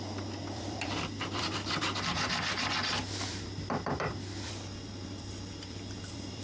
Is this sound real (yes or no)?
no